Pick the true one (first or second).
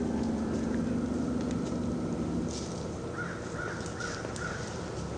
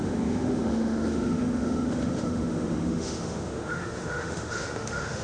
first